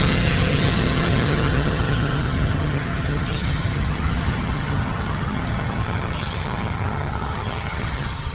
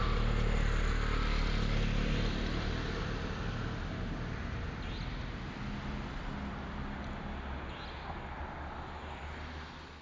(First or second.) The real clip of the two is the second